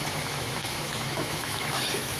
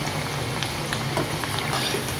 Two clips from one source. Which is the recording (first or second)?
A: second